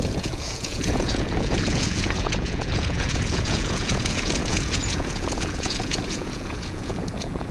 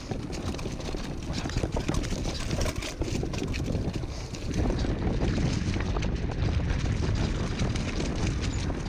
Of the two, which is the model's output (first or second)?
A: first